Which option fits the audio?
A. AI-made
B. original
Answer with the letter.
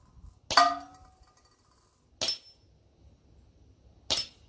B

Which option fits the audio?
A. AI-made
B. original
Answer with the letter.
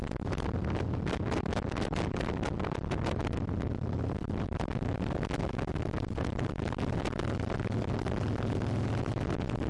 B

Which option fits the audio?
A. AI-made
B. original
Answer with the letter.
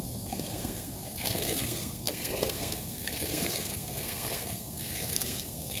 A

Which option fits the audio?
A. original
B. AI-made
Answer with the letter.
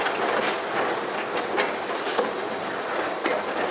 A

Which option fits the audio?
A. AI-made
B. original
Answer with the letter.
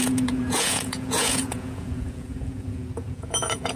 A